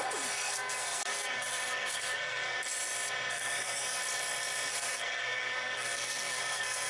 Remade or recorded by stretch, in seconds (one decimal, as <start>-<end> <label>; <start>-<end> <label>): 0.0-2.7 remade; 2.7-3.3 recorded; 3.3-4.0 remade; 4.0-4.7 recorded; 4.7-6.9 remade